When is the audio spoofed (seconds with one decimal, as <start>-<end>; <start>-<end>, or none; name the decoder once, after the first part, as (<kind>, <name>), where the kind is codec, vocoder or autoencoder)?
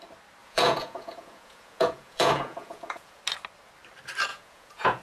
0.4-3.2 (vocoder, Vocos); 4.3-5.0